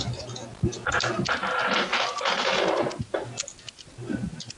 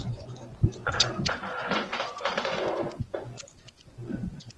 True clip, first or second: first